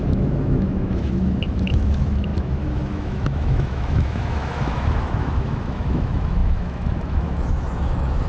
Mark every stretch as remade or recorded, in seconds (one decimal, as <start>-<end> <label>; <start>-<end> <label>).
0.0-8.3 remade